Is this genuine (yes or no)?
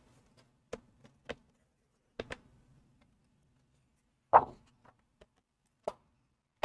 yes